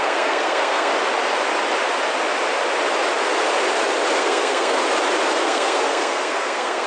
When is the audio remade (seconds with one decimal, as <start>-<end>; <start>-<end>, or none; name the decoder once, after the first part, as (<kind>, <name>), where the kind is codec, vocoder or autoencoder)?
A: 0.0-0.9 (codec, SNAC); 4.2-4.8; 5.4-6.9